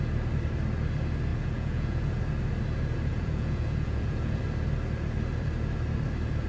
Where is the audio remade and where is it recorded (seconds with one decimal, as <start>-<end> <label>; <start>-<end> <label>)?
0.0-1.3 recorded; 1.3-2.2 remade; 2.2-3.1 recorded; 3.1-4.4 remade; 4.4-6.5 recorded